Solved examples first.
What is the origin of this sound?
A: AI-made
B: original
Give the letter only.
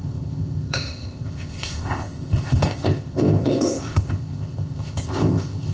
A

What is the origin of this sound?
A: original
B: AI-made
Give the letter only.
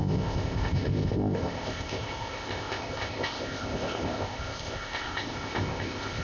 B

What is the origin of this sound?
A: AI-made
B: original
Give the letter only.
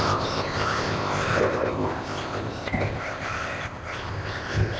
A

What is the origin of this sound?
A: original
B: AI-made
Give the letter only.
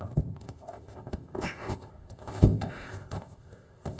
B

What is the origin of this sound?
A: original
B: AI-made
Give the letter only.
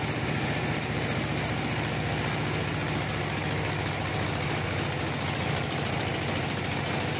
A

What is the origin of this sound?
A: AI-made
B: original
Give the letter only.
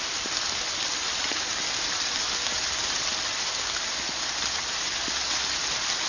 B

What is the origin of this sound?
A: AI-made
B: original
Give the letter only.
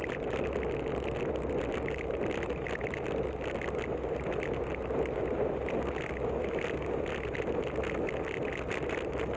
B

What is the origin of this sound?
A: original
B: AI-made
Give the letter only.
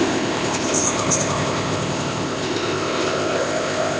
B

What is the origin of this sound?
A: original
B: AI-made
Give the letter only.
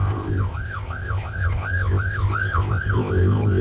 B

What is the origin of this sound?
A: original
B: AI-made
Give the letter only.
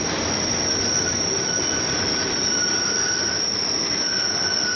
A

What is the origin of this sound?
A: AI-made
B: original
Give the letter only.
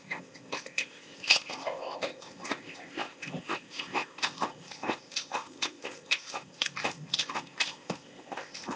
A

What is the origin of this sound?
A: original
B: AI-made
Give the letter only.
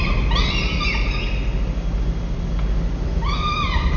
A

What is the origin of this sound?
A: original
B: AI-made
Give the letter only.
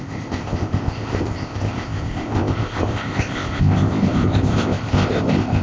B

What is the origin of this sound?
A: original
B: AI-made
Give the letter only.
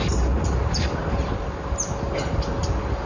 A